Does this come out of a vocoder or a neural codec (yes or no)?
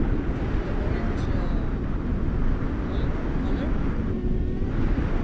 no